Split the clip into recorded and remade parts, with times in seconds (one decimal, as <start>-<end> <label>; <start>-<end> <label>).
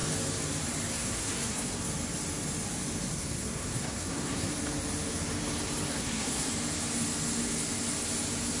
0.0-0.9 recorded; 0.9-1.8 remade; 1.8-3.1 recorded; 3.1-4.5 remade; 4.5-5.9 recorded; 5.9-6.5 remade; 6.5-8.6 recorded